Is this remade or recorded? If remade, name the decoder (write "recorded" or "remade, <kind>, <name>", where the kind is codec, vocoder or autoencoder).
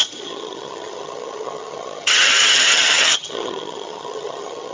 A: remade, vocoder, HiFi-GAN